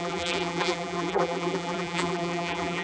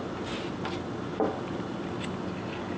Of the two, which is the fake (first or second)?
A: first